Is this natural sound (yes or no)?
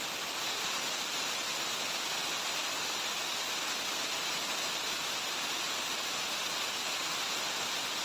yes